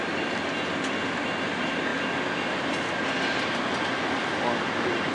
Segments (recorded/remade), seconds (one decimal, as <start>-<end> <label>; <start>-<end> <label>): 0.0-5.1 recorded